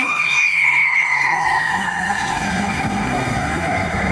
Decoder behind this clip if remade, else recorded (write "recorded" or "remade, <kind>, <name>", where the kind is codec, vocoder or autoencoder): remade, codec, SNAC